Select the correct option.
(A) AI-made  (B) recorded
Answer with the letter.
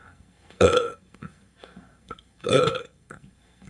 A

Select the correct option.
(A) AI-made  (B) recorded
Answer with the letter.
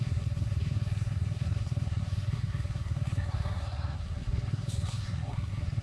A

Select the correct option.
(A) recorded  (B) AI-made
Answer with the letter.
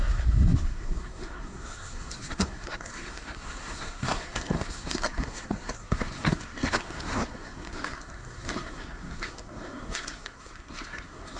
B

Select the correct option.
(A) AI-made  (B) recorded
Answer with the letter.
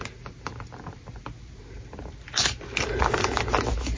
B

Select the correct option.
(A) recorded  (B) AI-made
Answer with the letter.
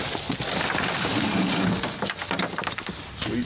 A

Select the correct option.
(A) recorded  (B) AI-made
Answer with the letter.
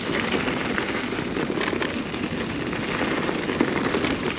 A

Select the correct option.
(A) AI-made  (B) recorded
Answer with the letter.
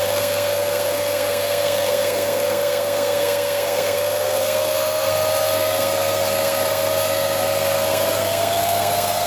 A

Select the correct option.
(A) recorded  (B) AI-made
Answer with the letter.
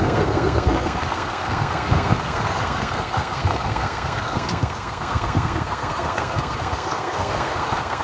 B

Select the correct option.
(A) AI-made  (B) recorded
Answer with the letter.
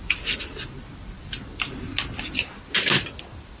B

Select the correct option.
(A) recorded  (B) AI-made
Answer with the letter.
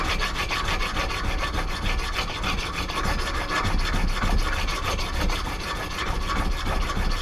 A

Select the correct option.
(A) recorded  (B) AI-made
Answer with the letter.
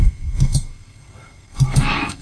B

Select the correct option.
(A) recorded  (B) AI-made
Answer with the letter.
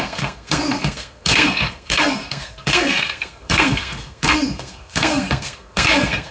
B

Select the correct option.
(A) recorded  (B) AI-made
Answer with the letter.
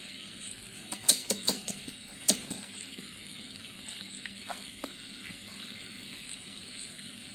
B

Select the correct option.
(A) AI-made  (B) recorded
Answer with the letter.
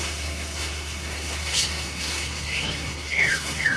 A